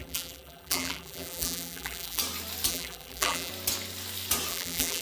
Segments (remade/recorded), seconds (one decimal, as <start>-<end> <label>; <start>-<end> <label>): 0.0-2.2 remade; 2.2-2.7 recorded; 2.7-3.5 remade; 3.5-4.5 recorded; 4.5-5.0 remade